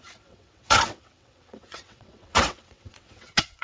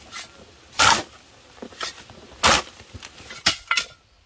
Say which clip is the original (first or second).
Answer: second